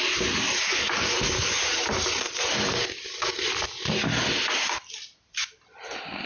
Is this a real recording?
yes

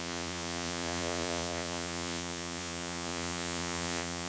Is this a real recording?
no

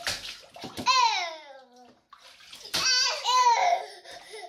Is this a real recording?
yes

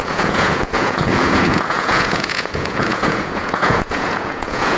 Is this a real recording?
no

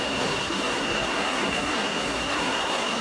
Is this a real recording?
no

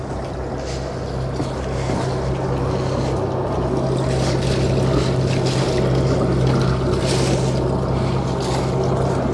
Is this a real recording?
yes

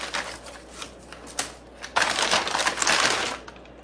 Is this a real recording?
yes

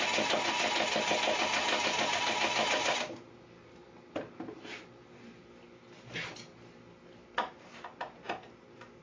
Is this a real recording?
yes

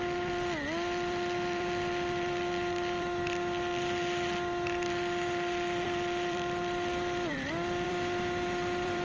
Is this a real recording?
no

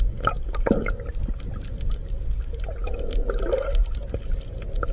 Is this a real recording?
yes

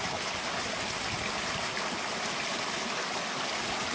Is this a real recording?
yes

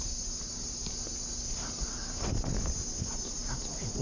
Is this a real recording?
yes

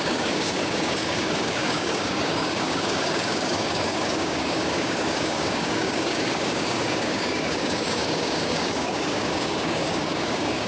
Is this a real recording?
no